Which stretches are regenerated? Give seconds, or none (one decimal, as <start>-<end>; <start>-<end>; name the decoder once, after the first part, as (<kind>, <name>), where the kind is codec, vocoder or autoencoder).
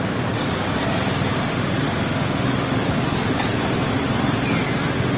1.5-2.8 (autoencoder, DAC-VAE)